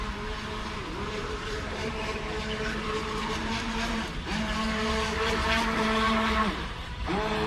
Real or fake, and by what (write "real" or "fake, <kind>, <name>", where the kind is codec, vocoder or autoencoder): fake, vocoder, BigVGAN v2